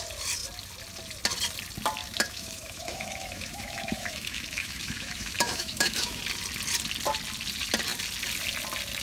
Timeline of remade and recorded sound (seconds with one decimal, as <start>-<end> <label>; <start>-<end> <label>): 0.0-2.0 recorded; 2.0-6.2 remade; 6.2-9.0 recorded